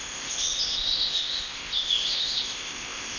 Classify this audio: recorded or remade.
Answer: remade